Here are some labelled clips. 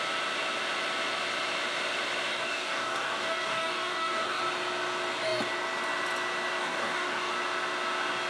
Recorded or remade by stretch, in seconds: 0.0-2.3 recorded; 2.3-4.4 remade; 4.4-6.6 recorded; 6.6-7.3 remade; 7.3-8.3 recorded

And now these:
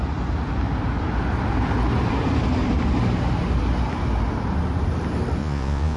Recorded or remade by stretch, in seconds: 0.0-5.4 recorded; 5.4-6.0 remade

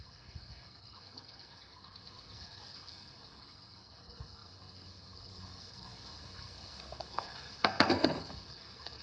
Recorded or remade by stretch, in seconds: 0.0-9.0 remade

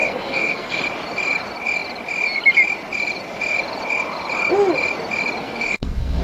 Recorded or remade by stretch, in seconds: 0.0-0.8 remade; 0.8-5.4 recorded; 5.4-6.2 remade

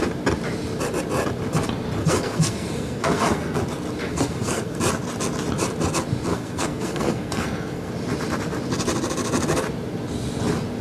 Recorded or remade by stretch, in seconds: 0.0-2.0 recorded; 2.0-3.6 remade; 3.6-4.0 recorded; 4.0-4.8 remade; 4.8-6.3 recorded; 6.3-7.9 remade; 7.9-10.8 recorded

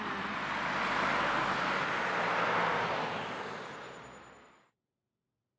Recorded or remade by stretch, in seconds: 0.0-5.6 recorded

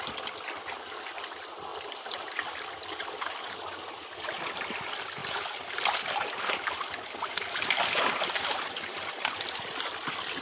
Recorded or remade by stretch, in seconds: 0.0-10.4 recorded

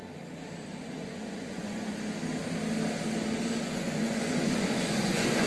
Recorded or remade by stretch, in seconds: 0.0-0.8 recorded; 0.8-1.9 remade; 1.9-3.6 recorded; 3.6-5.5 remade